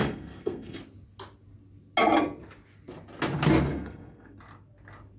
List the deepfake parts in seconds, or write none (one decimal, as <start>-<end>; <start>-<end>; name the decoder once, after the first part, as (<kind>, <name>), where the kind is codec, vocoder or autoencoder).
0.0-0.8 (codec, SNAC); 3.7-4.4